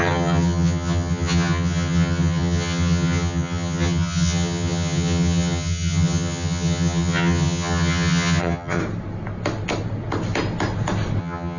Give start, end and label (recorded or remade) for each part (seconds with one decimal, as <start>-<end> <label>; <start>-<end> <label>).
0.0-8.8 remade; 8.8-11.2 recorded; 11.2-11.6 remade